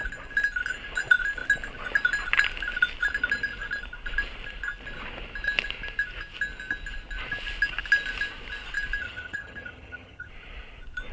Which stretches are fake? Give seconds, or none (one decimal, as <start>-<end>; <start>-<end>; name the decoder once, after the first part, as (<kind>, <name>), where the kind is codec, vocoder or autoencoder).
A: 9.0-10.3 (vocoder, HiFi-GAN)